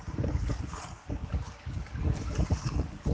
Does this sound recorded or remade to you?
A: remade